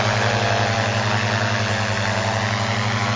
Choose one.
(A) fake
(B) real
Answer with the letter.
B